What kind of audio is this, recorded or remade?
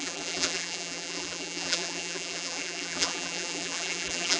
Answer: remade